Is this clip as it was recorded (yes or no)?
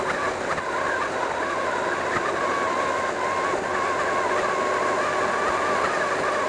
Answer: yes